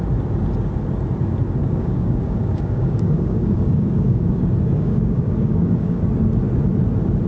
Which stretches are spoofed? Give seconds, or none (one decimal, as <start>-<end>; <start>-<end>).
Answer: 1.6-6.0